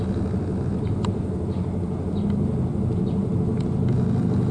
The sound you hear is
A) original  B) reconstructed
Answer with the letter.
A